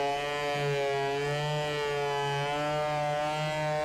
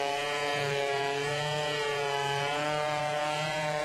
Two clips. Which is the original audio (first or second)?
first